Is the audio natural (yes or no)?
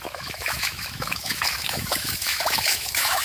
no